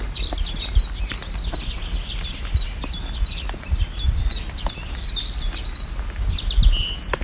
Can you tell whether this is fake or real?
real